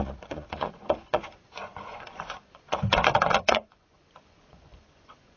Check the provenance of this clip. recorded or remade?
remade